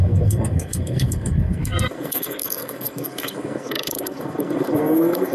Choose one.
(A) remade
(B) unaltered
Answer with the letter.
A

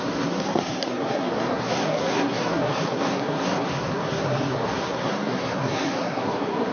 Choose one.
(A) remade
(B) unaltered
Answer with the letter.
A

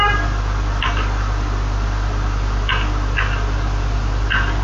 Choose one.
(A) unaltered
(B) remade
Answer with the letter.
B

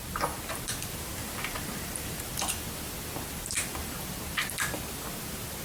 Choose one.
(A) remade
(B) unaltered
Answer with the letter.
A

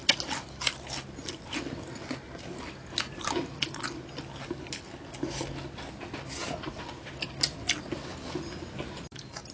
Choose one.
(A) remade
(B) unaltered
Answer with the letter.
B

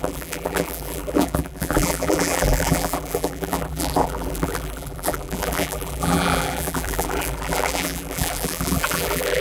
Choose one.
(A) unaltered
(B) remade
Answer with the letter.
B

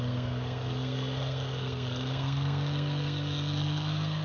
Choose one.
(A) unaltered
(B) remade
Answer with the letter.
B